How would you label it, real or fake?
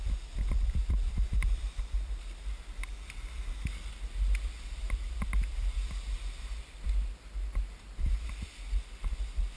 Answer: real